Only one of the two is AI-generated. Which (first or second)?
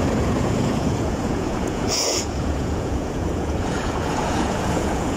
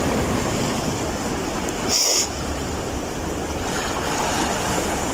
first